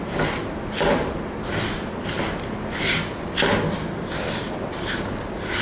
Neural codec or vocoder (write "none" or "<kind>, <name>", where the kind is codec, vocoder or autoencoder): none